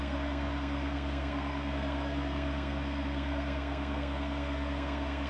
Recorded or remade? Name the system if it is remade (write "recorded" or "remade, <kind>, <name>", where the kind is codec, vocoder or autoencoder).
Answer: remade, codec, SNAC